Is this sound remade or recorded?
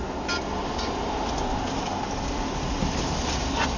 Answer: recorded